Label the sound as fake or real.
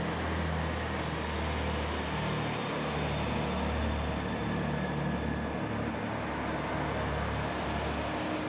real